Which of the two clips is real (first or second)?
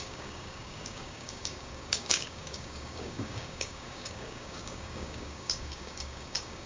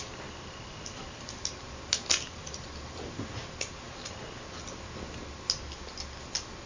second